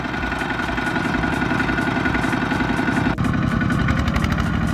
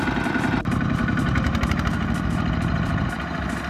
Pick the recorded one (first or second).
first